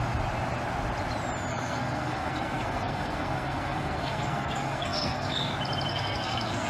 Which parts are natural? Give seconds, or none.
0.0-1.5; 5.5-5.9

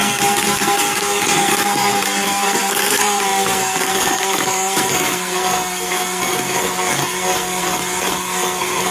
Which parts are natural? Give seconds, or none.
none

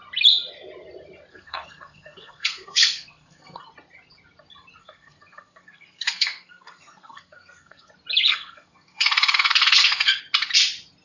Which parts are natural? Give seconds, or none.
0.0-1.3; 3.6-4.8; 7.9-8.3; 10.2-11.0

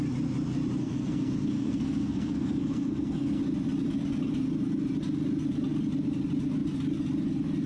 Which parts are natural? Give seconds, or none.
0.0-0.8; 3.4-7.7

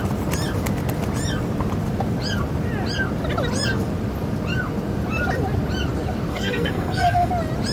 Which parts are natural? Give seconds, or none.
0.0-6.3; 7.3-7.7